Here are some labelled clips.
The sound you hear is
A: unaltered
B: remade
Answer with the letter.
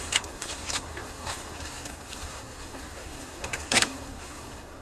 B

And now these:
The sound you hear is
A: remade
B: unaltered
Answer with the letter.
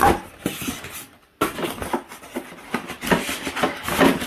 B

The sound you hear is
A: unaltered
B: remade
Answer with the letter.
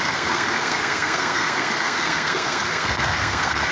B